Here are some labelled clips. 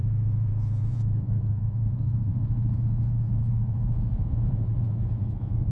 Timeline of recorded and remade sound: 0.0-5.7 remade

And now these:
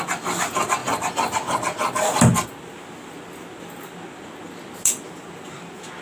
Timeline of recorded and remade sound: 0.0-6.0 recorded

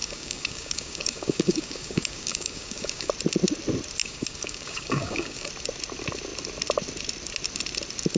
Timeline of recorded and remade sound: 0.0-3.1 remade; 3.1-4.0 recorded; 4.0-5.5 remade; 5.5-8.2 recorded